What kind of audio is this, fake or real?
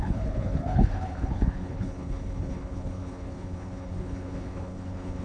fake